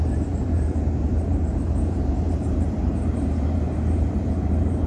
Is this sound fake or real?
fake